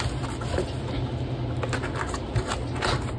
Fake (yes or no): no